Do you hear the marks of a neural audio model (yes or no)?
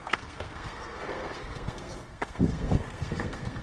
yes